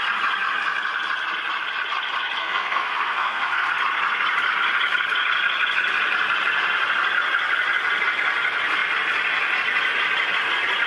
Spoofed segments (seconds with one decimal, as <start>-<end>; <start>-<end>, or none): 2.4-3.7